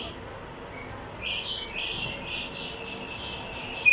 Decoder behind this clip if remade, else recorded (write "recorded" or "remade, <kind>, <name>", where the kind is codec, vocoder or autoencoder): recorded